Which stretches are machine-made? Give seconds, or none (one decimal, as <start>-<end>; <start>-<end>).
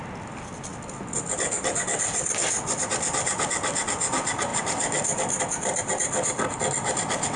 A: none